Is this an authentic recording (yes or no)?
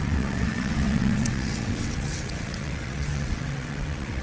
no